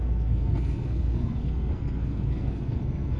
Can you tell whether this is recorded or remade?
remade